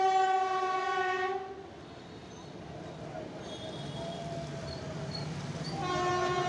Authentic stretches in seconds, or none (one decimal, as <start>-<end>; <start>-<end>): 0.0-6.5